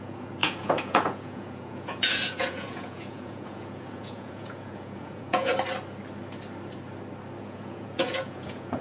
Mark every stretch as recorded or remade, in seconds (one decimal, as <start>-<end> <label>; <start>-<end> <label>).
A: 0.0-5.5 remade; 5.5-7.4 recorded; 7.4-8.8 remade